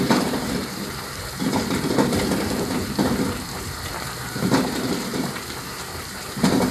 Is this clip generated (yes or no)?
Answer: yes